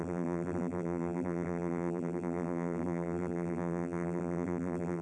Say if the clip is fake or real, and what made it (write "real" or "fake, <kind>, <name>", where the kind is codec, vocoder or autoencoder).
fake, vocoder, BigVGAN v2